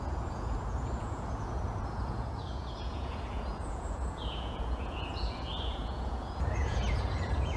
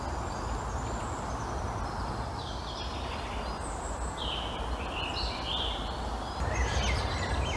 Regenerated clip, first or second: first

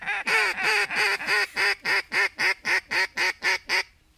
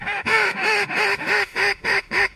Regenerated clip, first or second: second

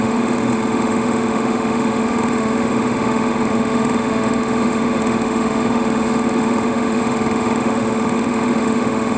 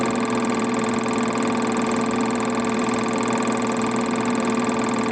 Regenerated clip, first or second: first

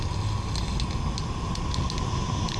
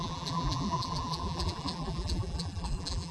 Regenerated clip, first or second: second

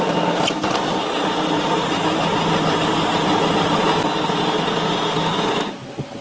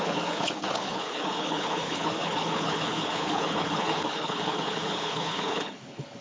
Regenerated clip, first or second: second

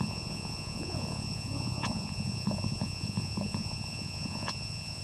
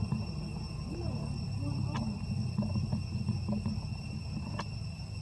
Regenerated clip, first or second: first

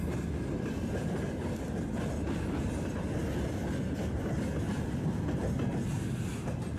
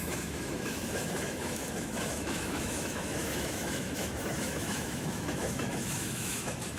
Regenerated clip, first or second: second